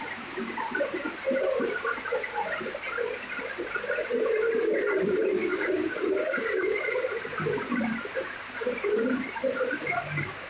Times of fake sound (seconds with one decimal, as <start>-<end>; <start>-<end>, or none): 5.4-7.1